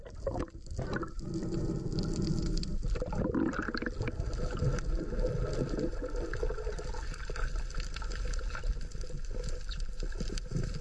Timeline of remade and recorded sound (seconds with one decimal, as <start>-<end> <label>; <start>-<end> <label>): 0.0-3.6 remade; 3.6-8.7 recorded; 8.7-10.8 remade